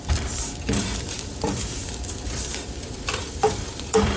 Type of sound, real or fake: fake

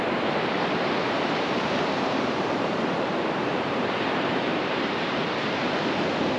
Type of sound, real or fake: fake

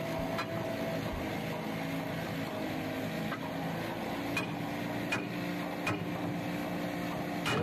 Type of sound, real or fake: real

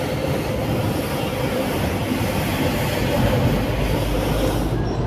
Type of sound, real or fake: real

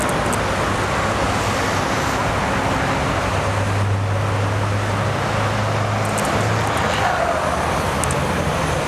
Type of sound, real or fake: real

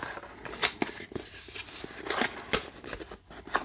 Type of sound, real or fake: real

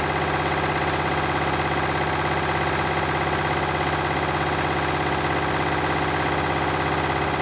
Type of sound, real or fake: real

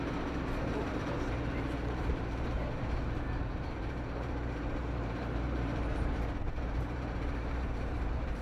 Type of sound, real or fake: fake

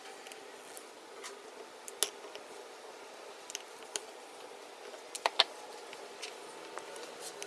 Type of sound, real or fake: real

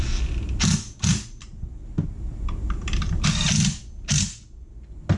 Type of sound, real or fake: real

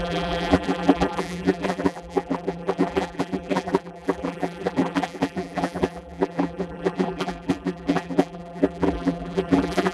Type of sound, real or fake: fake